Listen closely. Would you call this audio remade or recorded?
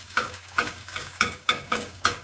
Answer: remade